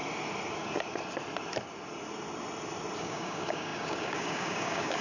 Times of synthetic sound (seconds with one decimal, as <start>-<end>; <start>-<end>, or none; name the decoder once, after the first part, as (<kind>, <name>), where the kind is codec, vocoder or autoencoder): 3.0-5.0 (codec, DAC)